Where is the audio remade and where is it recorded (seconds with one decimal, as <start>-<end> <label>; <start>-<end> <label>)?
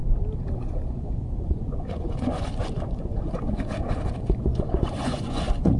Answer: 0.0-0.6 recorded; 0.6-5.8 remade